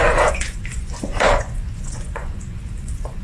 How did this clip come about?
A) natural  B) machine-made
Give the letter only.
B